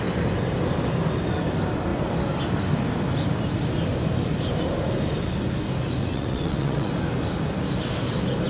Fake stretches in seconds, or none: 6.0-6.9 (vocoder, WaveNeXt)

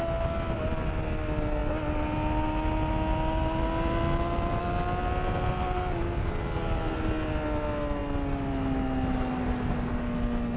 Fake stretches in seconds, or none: none

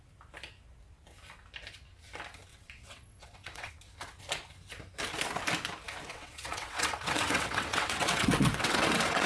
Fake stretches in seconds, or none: 2.5-3.7 (vocoder, WaveNeXt); 6.1-9.3

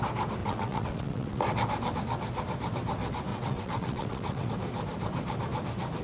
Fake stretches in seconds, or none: 0.4-1.4 (vocoder, WaveNeXt); 3.3-4.5

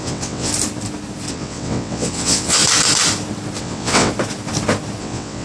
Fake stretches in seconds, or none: 0.0-0.5 (vocoder, WaveNeXt); 1.3-2.6; 3.6-4.1; 5.0-5.4

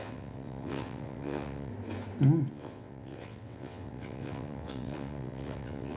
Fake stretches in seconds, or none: 0.0-1.7 (vocoder, WaveNeXt); 2.5-6.0

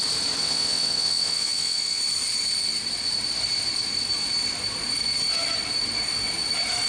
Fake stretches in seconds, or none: 0.4-2.0 (vocoder, WaveNeXt)

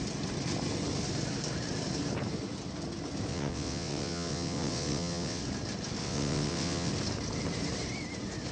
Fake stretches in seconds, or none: 3.3-5.4 (vocoder, WaveNeXt); 6.0-6.9